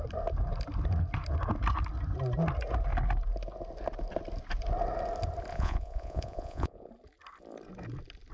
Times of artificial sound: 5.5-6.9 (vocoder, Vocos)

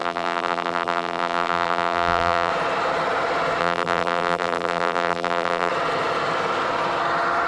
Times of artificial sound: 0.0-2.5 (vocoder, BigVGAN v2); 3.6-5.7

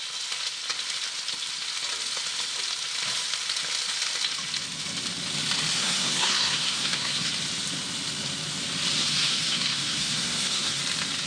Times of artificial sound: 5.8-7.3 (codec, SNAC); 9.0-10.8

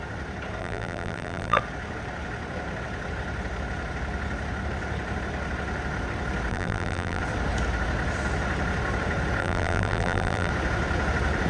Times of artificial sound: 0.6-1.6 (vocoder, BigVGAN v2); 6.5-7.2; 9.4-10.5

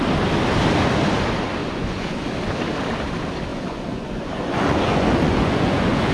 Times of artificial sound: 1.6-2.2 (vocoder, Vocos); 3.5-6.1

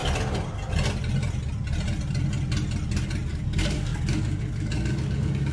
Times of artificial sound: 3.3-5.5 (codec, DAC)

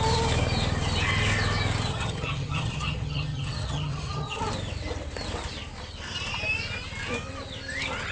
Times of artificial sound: 1.9-4.4 (vocoder, HiFi-GAN)

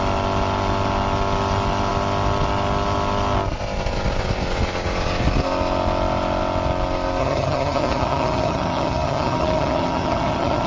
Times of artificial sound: 7.2-10.7 (vocoder, HiFi-GAN)